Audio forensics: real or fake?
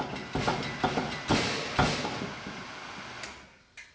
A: real